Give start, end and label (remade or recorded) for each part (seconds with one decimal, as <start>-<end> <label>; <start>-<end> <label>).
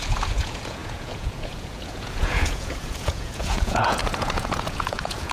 0.0-5.3 remade